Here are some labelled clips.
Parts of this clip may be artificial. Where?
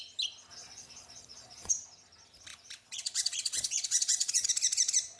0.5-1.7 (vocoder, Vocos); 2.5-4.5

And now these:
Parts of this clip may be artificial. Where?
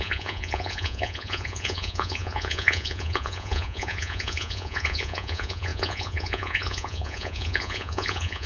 0.0-8.5 (vocoder, Vocos)